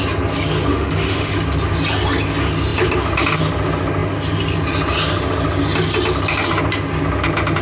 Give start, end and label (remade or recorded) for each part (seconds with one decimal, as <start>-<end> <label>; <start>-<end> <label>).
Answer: 0.0-0.7 recorded; 0.7-1.3 remade; 1.3-7.6 recorded